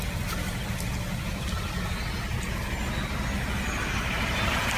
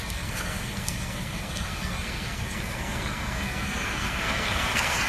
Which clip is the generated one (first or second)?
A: second